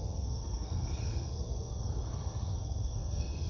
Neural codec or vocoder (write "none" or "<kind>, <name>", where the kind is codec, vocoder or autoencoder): codec, SNAC